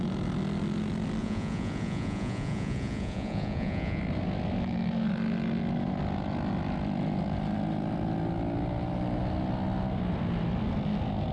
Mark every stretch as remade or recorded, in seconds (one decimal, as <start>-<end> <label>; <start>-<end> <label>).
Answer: 0.0-1.2 recorded; 1.2-4.0 remade; 4.0-11.3 recorded